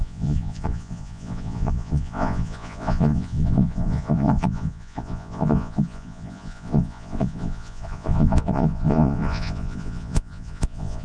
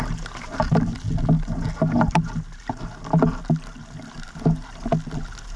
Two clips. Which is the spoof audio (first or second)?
first